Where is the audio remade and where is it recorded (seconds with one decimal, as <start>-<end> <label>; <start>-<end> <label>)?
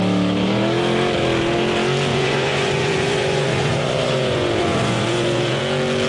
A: 0.0-2.1 recorded; 2.1-5.6 remade; 5.6-6.1 recorded